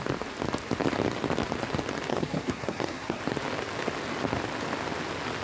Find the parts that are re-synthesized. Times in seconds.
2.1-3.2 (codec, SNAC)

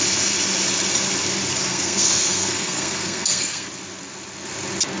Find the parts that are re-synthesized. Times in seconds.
1.7-3.7 (codec, SNAC)

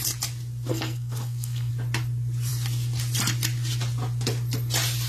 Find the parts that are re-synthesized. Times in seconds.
0.7-1.7 (codec, SNAC)

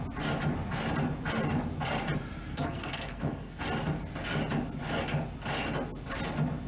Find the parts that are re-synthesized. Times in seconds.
2.5-3.6 (codec, SNAC)

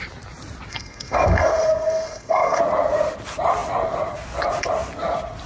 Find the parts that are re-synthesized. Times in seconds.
0.7-2.6 (codec, SNAC)